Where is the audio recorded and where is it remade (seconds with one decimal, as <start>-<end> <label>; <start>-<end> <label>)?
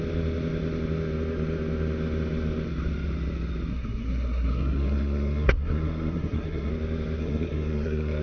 0.0-3.7 recorded; 3.7-6.7 remade; 6.7-7.2 recorded; 7.2-8.2 remade